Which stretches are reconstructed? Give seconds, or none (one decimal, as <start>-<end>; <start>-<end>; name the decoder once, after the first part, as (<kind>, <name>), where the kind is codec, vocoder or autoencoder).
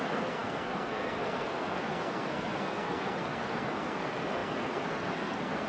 0.0-5.7 (codec, SNAC)